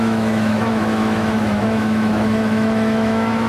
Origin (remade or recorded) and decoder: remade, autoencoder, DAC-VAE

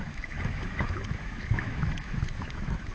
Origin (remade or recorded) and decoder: remade, autoencoder, DAC-VAE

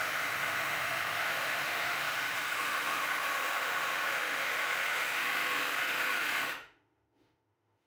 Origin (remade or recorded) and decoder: remade, autoencoder, DAC-VAE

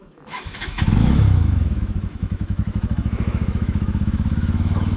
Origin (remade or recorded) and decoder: remade, autoencoder, DAC-VAE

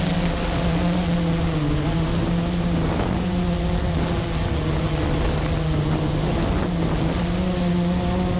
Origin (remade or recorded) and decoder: recorded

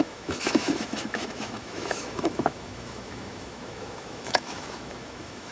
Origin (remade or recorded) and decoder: remade, autoencoder, DAC-VAE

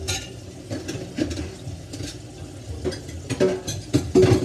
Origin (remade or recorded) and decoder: recorded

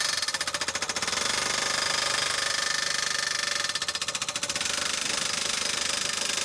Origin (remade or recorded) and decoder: recorded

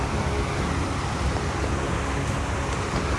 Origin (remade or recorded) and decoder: recorded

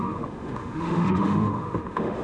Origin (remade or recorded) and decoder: remade, autoencoder, DAC-VAE